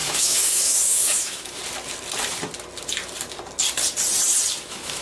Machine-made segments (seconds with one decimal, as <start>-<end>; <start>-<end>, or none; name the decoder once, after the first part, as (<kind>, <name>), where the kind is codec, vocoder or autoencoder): 0.0-1.6 (autoencoder, DAC-VAE); 4.6-5.0